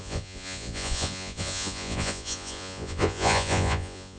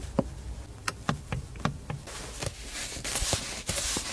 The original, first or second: second